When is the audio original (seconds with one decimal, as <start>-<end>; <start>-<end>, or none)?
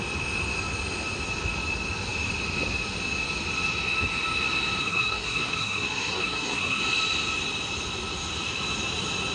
0.0-4.8; 6.8-9.3